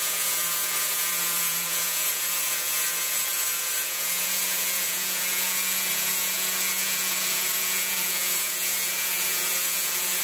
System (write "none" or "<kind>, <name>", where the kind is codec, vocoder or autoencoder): vocoder, Vocos